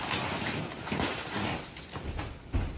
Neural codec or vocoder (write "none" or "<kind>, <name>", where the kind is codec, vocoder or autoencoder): none